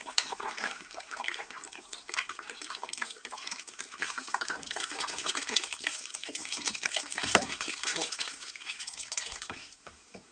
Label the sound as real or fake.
fake